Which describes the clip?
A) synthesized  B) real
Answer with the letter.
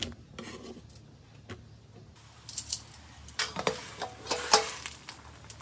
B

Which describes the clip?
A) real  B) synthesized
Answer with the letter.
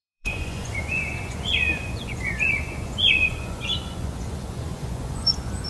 B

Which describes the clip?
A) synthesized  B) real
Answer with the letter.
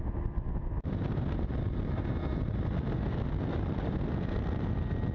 B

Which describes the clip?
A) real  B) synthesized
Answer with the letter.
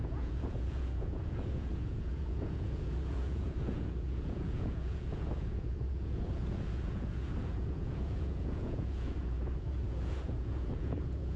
B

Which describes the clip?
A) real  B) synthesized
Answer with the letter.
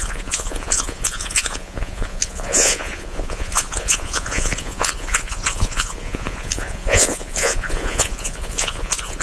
B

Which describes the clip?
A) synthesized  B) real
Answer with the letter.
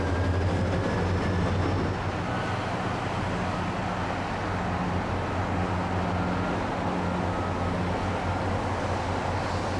B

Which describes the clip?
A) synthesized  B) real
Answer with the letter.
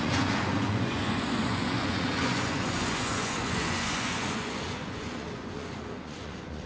A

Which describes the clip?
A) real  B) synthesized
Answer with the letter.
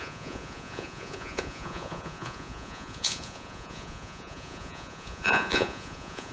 B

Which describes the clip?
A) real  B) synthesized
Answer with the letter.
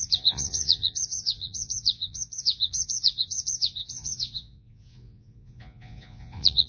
B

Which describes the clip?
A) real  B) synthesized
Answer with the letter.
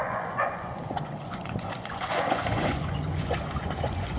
B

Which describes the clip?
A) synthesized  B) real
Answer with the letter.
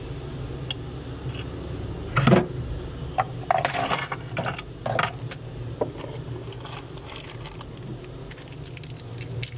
B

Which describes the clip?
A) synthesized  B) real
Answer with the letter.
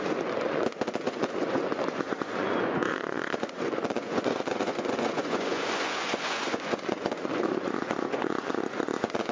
A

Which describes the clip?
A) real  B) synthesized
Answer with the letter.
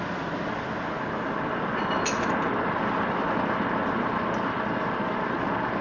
A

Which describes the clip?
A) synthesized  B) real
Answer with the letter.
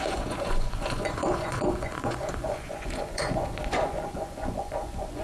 A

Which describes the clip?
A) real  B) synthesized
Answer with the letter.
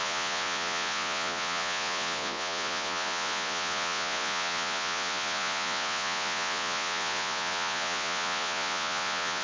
B